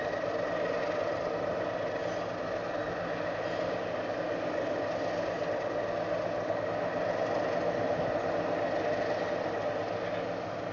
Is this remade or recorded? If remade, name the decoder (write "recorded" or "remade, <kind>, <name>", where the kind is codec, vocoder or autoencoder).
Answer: recorded